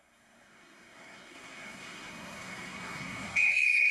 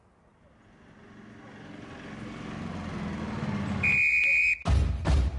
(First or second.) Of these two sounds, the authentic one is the second